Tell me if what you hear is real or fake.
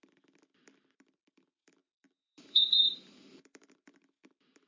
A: fake